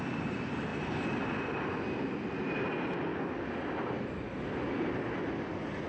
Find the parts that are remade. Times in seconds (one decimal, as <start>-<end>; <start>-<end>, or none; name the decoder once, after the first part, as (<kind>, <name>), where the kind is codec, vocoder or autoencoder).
none